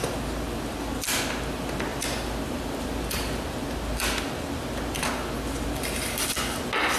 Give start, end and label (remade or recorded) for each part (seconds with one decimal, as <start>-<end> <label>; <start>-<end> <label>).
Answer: 0.0-7.0 recorded